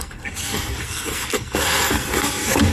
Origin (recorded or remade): remade